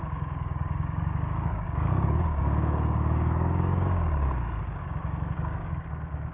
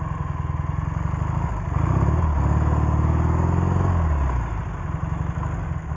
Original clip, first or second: second